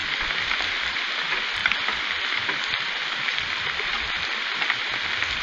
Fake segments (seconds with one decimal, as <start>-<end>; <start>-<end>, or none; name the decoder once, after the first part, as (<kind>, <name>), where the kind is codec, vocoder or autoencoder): 0.0-0.6 (vocoder, BigVGAN v2); 1.6-4.8